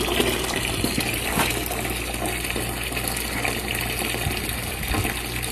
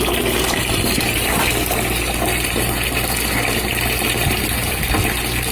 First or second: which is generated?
second